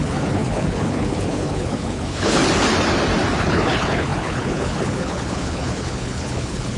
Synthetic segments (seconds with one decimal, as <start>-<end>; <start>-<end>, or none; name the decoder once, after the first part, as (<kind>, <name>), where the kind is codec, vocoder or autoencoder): 0.0-2.4 (codec, HILCodec); 3.4-6.8

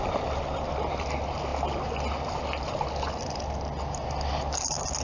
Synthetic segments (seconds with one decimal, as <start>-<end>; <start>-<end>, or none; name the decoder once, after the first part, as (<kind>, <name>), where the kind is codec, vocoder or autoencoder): none

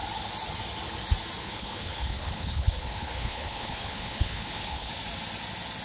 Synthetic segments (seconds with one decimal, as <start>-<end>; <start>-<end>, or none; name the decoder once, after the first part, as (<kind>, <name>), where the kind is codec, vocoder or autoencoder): 1.4-4.9 (codec, HILCodec)